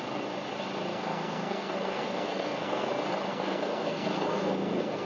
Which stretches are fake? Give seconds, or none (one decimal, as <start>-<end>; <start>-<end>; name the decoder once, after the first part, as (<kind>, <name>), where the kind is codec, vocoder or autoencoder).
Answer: 0.9-2.9 (codec, SNAC); 3.3-5.1